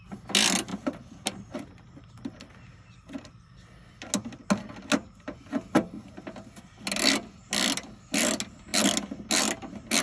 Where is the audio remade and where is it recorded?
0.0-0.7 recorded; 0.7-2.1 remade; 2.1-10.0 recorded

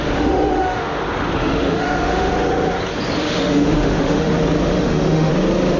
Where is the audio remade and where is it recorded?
0.0-1.0 remade; 1.0-1.4 recorded; 1.4-2.3 remade; 2.3-3.2 recorded; 3.2-4.3 remade; 4.3-4.7 recorded; 4.7-5.3 remade; 5.3-5.8 recorded

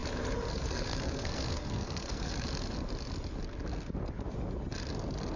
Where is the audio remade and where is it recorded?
0.0-0.5 recorded; 0.5-2.3 remade; 2.3-5.4 recorded

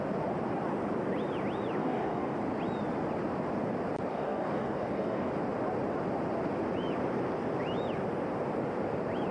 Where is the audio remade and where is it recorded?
0.0-1.8 recorded; 1.8-2.4 remade; 2.4-4.1 recorded; 4.1-5.3 remade; 5.3-9.3 recorded